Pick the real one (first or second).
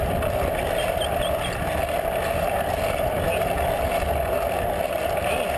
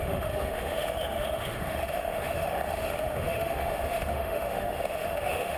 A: first